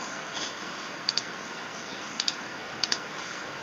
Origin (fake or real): fake